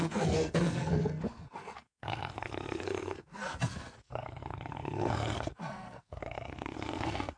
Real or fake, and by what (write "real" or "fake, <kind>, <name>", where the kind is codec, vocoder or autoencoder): fake, codec, SNAC